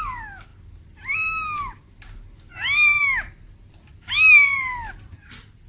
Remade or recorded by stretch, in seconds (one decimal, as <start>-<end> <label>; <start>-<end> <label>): 0.0-5.7 recorded